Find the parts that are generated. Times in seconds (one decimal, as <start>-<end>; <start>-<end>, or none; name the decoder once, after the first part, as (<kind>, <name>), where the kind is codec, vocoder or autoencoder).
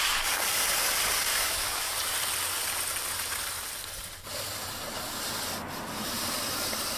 1.3-1.9 (autoencoder, DAC-VAE)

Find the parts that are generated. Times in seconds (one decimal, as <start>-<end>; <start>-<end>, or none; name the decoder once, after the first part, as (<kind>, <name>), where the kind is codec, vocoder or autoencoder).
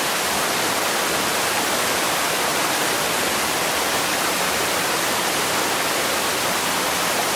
none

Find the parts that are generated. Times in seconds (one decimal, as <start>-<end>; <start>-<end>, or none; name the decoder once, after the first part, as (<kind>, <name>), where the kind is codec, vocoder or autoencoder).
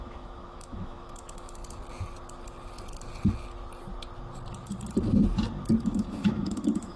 0.0-1.6 (autoencoder, DAC-VAE); 5.8-7.0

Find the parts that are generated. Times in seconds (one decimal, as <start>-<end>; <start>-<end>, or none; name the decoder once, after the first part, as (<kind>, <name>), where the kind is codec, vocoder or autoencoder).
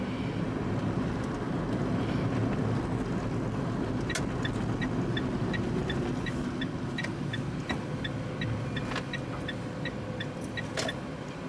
none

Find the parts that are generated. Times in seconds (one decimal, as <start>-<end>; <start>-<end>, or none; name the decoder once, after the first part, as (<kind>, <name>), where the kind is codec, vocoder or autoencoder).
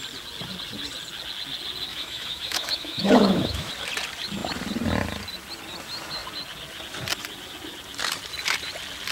1.9-3.7 (autoencoder, DAC-VAE)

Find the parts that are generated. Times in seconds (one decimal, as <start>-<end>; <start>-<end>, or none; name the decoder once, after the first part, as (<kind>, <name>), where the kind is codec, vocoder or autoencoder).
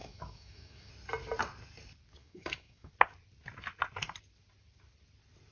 0.0-0.9 (autoencoder, DAC-VAE); 2.2-2.9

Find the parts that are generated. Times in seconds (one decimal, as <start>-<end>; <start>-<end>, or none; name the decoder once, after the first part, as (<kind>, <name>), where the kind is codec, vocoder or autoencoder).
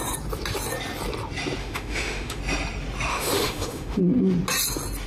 1.6-2.4 (autoencoder, DAC-VAE); 3.1-4.0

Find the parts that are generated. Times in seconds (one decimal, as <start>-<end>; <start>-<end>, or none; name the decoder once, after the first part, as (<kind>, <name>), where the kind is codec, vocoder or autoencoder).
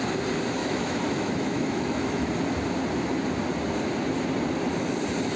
0.6-2.3 (autoencoder, DAC-VAE)